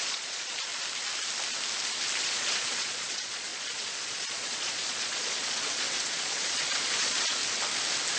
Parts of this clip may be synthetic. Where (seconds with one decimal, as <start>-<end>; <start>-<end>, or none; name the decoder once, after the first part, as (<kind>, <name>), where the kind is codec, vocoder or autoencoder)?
0.0-0.7 (vocoder, Vocos); 2.2-7.4